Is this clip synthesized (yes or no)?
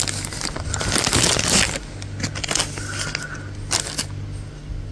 no